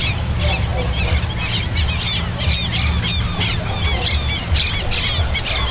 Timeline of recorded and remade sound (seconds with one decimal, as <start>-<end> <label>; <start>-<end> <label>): 0.0-5.7 recorded